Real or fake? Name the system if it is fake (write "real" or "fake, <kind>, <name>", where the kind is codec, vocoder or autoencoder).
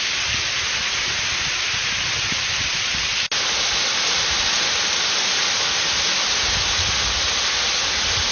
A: real